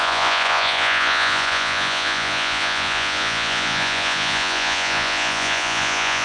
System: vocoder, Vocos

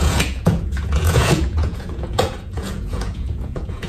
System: vocoder, Vocos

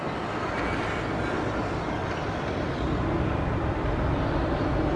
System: none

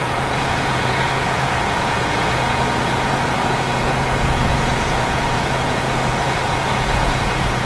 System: vocoder, Vocos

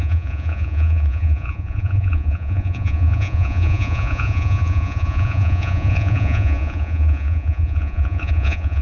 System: vocoder, Vocos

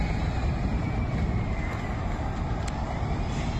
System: none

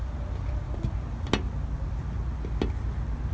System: none